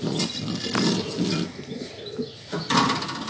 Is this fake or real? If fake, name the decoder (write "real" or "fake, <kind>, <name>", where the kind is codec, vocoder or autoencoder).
real